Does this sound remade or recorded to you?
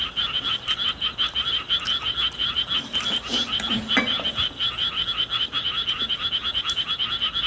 recorded